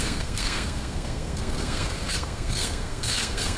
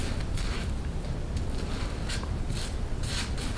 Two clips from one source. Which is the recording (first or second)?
second